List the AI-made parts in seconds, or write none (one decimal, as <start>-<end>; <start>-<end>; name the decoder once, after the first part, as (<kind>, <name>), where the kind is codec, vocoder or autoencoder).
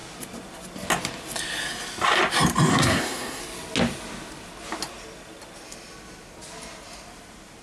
2.7-3.4 (codec, SNAC)